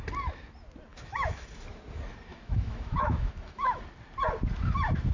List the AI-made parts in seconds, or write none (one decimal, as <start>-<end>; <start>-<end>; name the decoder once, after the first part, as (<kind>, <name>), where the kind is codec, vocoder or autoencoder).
0.9-1.5 (autoencoder, DAC-VAE); 2.3-3.8